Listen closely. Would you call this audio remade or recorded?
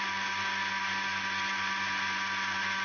recorded